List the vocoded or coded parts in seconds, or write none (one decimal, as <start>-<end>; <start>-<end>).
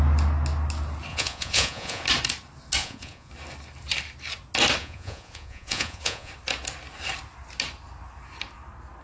1.1-2.0; 2.8-3.3; 4.8-6.3